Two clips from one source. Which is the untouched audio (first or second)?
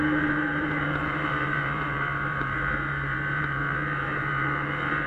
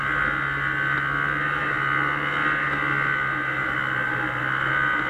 second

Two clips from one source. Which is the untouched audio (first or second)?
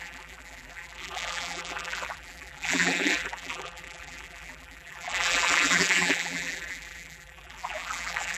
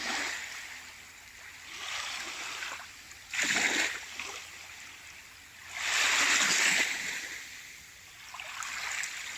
second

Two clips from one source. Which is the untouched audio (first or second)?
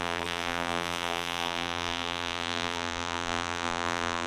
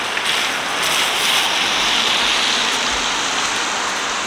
second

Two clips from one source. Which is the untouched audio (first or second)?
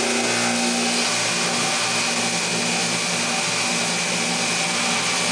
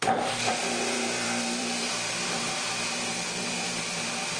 first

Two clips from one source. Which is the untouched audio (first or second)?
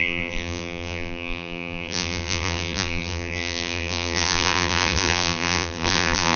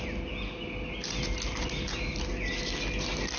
second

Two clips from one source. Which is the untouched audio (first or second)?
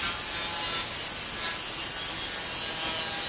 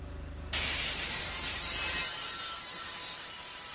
first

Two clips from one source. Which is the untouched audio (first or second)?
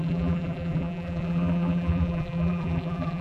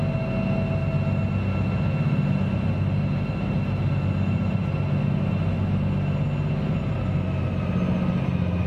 second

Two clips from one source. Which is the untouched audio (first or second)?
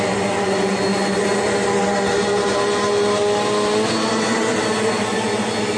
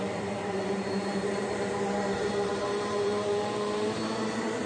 first